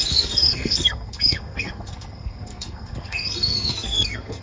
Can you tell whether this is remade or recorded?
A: remade